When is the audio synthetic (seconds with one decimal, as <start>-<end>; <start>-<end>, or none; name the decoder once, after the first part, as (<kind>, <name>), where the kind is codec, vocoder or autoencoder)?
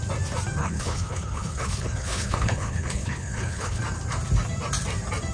0.6-3.8 (codec, HILCodec)